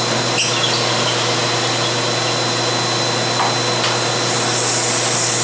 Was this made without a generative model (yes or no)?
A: yes